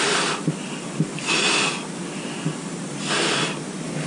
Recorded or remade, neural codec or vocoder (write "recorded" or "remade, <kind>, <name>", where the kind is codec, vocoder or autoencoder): recorded